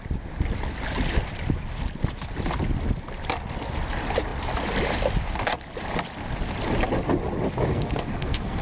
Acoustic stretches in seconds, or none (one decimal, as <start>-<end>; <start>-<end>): 0.0-7.7